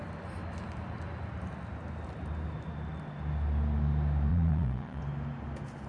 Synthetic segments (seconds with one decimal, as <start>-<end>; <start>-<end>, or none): 4.3-5.0